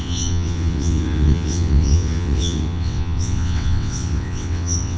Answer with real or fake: fake